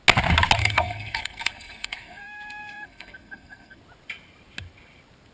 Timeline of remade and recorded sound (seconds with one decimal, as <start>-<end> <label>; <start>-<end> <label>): 0.0-0.6 recorded; 0.6-3.8 remade; 3.8-5.3 recorded